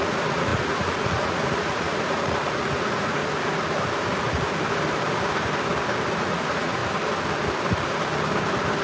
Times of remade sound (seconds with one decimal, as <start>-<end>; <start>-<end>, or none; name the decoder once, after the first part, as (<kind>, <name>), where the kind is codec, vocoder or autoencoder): 0.0-3.2 (vocoder, Vocos); 6.2-6.8